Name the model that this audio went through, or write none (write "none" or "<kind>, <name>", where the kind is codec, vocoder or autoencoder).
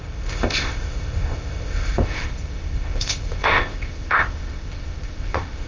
codec, ZipCodec